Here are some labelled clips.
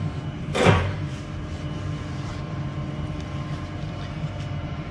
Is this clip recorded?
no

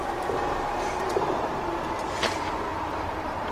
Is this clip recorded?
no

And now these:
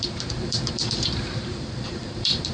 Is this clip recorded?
no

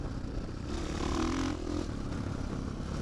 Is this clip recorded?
yes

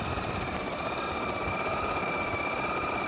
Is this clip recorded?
no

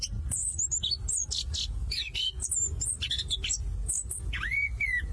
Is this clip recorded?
yes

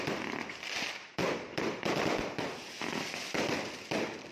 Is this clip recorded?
no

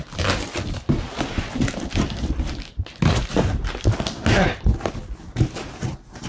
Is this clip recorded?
yes